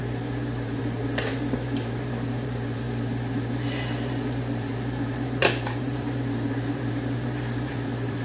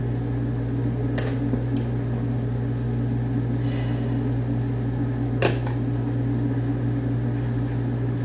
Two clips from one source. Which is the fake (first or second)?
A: first